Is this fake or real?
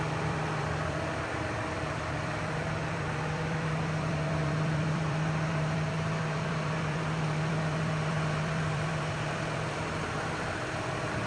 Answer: fake